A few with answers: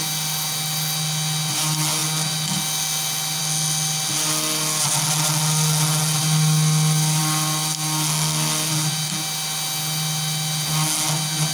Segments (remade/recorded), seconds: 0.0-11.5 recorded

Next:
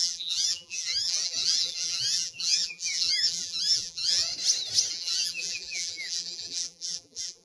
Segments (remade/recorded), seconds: 0.0-4.3 remade; 4.3-4.9 recorded; 4.9-7.4 remade

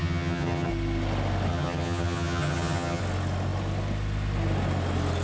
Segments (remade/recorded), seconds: 0.0-0.7 remade; 0.7-1.5 recorded; 1.5-3.0 remade; 3.0-5.2 recorded

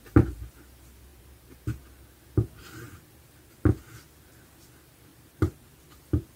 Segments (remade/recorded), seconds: 0.0-1.1 recorded; 1.1-1.8 remade; 1.8-2.6 recorded; 2.6-3.5 remade; 3.5-5.1 recorded; 5.1-6.0 remade; 6.0-6.4 recorded

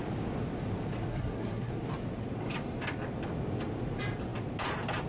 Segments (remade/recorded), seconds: 0.0-1.1 recorded; 1.1-1.7 remade; 1.7-5.1 recorded